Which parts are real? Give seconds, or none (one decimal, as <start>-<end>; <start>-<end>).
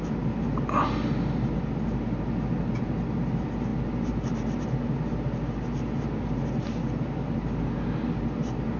0.0-8.8